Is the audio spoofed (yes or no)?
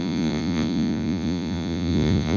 yes